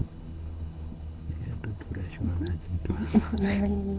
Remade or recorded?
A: remade